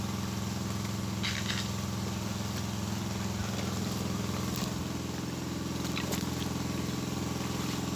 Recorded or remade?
recorded